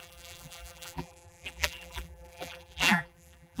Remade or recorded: remade